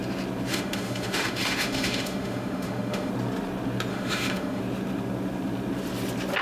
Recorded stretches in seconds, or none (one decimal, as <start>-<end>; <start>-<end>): 0.0-0.5; 3.1-3.9; 4.6-6.4